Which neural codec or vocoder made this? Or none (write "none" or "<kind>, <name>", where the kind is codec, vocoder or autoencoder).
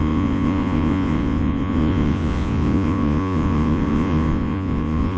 vocoder, Vocos